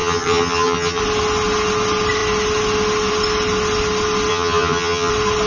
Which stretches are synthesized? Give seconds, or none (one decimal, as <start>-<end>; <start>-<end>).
0.0-1.0; 4.3-5.1

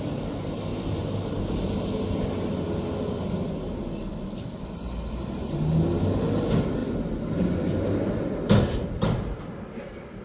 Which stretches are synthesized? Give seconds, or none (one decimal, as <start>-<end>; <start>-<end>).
none

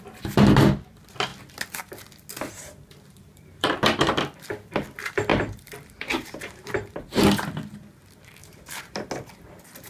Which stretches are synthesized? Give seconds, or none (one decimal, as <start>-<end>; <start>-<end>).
2.5-4.2; 5.3-7.2; 8.4-9.1

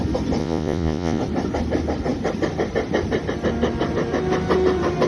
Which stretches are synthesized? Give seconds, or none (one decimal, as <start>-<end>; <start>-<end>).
0.4-1.2

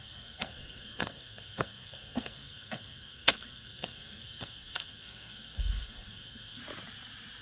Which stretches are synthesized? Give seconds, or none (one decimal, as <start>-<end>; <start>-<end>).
0.0-6.6

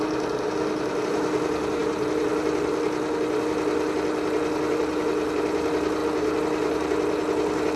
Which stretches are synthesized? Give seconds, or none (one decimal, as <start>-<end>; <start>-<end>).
none

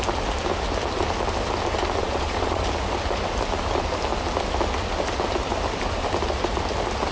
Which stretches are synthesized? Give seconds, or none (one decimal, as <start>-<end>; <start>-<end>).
2.0-2.6